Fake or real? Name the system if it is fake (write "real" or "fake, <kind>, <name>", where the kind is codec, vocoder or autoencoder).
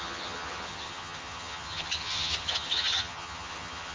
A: fake, vocoder, HiFi-GAN